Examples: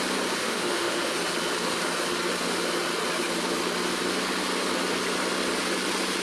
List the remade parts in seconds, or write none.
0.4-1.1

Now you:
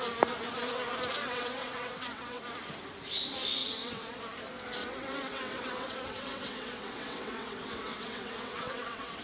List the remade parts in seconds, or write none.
1.2-2.4; 3.6-4.2; 4.8-9.2

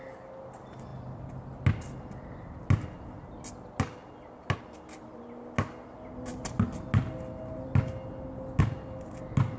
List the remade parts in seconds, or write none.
none

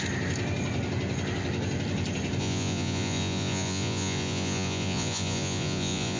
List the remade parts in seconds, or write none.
2.4-6.2

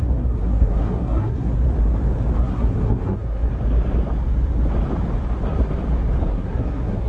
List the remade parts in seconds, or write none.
0.0-1.5; 2.4-3.5; 6.3-7.1

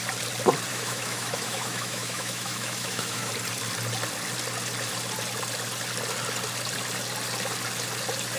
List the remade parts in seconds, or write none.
0.7-3.3

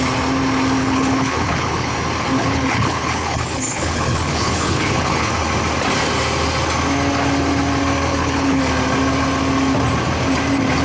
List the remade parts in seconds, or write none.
0.8-1.9; 2.4-5.3; 8.1-8.6

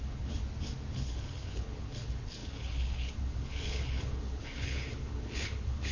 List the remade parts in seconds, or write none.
0.0-0.4; 0.9-5.9